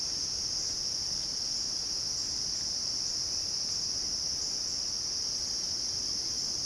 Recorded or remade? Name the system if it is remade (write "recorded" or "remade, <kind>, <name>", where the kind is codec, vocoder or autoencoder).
recorded